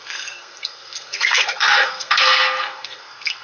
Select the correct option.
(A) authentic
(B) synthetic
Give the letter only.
B